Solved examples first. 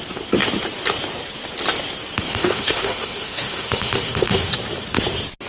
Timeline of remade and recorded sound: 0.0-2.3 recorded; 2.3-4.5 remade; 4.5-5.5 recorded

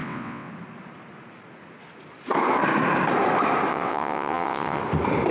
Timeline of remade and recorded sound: 0.0-0.5 remade; 0.5-3.7 recorded; 3.7-4.8 remade; 4.8-5.3 recorded

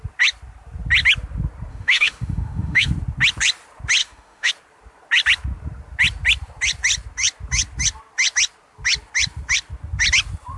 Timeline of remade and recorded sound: 0.0-1.7 recorded; 1.7-2.9 remade; 2.9-4.0 recorded; 4.0-4.5 remade; 4.5-10.6 recorded

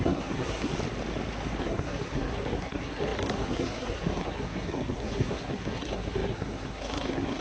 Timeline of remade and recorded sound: 0.0-0.7 remade; 0.7-1.6 recorded; 1.6-7.4 remade

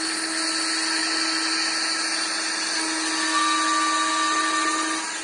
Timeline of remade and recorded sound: 0.0-5.2 recorded

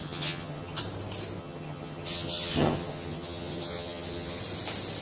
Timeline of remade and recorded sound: 0.0-0.8 remade; 0.8-1.4 recorded; 1.4-4.4 remade; 4.4-5.0 recorded

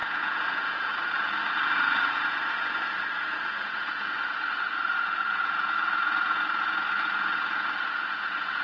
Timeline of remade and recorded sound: 0.0-8.6 remade

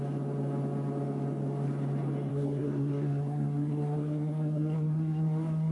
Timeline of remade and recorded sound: 0.0-2.3 recorded; 2.3-5.7 remade